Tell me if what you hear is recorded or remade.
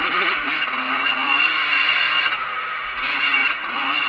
remade